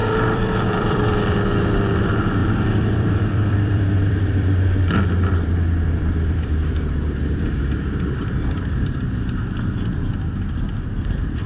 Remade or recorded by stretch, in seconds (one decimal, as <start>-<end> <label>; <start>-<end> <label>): 0.0-1.1 remade; 1.1-2.4 recorded; 2.4-7.6 remade; 7.6-11.5 recorded